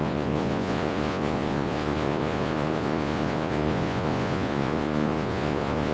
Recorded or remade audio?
remade